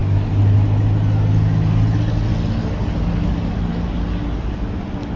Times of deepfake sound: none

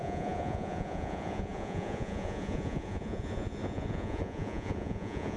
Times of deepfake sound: 0.0-5.4 (vocoder, Vocos)

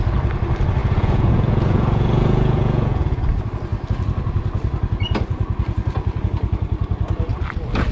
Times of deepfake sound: 0.8-3.2 (vocoder, Vocos)

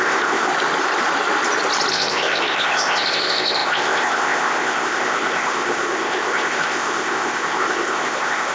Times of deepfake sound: 0.0-0.5 (codec, ZipCodec); 1.9-8.5